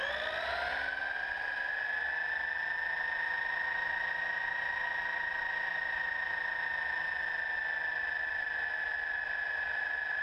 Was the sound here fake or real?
real